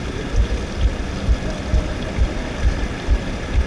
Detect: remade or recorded recorded